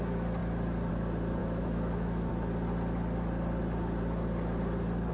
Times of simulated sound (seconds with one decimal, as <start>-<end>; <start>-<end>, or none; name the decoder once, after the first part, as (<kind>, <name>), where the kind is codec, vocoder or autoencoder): 1.4-2.3 (autoencoder, DAC-VAE)